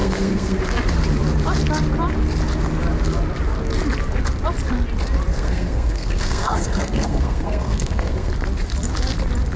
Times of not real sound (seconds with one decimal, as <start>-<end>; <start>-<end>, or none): 0.0-0.6; 5.3-8.3